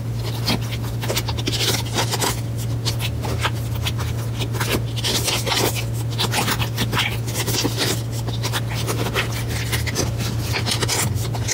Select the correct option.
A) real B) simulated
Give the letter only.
A